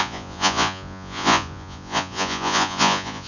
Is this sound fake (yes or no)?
yes